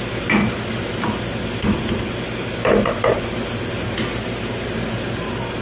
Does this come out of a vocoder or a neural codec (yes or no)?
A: no